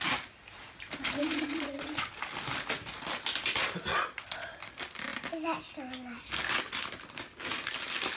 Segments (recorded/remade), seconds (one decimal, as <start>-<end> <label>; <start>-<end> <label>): 0.0-1.2 recorded; 1.2-2.1 remade; 2.1-3.9 recorded; 3.9-4.5 remade; 4.5-8.2 recorded